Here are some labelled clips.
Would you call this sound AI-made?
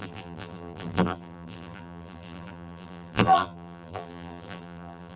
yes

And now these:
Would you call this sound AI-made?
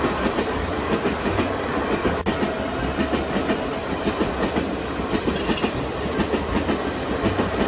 no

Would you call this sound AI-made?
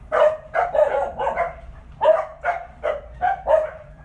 yes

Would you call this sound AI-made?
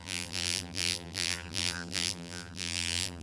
yes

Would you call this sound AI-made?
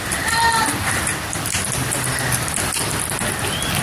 no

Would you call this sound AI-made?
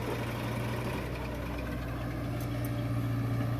no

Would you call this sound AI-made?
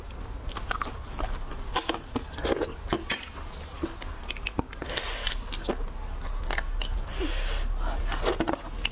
no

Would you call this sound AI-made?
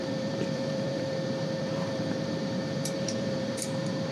yes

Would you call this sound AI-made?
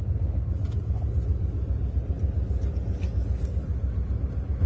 no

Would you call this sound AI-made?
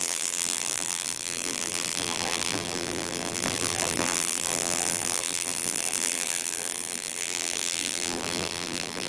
yes